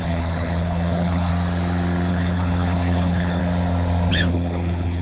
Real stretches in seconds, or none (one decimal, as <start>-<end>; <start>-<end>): 1.3-2.1; 3.4-4.1